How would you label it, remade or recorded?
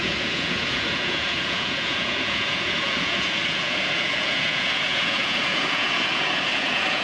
remade